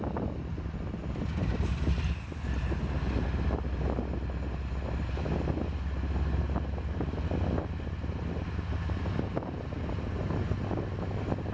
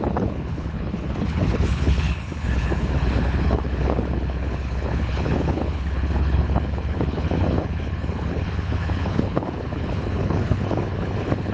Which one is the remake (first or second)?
second